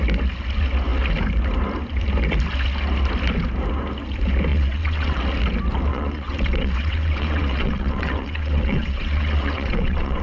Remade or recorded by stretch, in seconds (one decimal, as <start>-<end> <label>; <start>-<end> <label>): 0.0-4.5 recorded; 4.5-5.2 remade; 5.2-5.9 recorded; 5.9-10.2 remade